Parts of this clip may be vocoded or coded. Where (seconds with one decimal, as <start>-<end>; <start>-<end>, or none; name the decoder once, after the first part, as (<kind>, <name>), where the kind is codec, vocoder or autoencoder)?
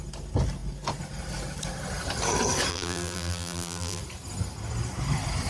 2.7-4.0 (vocoder, BigVGAN v2)